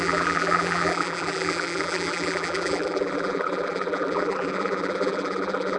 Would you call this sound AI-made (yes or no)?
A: yes